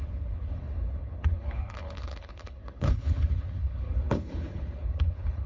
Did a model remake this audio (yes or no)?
yes